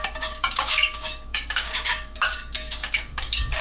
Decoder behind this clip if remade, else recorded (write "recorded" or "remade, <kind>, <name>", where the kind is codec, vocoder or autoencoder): remade, codec, DAC